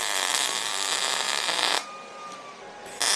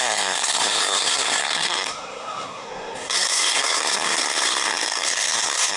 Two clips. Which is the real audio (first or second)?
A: first